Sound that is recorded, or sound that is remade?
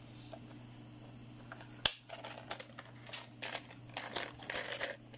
recorded